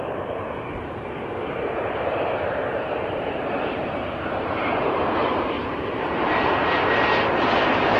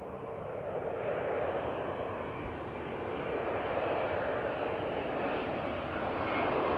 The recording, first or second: second